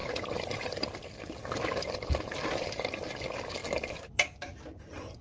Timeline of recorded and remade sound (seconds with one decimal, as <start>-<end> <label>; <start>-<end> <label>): 0.0-5.2 remade